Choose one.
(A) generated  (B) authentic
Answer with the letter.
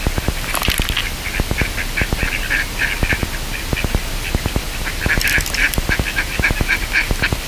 B